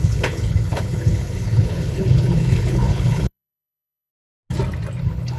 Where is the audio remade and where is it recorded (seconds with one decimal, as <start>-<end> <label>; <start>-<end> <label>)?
0.0-4.1 remade; 4.1-5.0 recorded; 5.0-5.4 remade